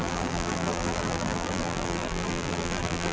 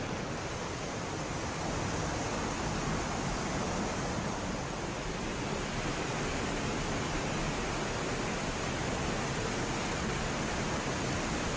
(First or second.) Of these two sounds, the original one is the second